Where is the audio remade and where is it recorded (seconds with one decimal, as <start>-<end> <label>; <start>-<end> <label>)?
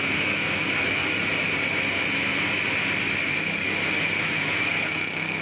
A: 0.0-1.0 remade; 1.0-4.2 recorded; 4.2-5.4 remade